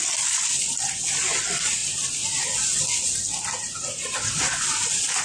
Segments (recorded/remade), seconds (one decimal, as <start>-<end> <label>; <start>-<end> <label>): 0.0-5.2 recorded